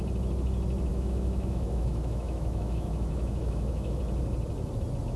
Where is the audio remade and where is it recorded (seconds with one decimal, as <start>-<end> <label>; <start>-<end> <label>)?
0.0-0.9 recorded; 0.9-4.0 remade; 4.0-5.2 recorded